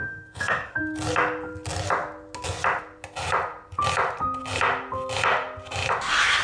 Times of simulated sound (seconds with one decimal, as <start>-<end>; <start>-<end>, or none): 0.0-0.8